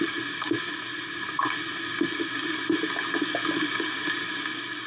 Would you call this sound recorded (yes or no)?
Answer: yes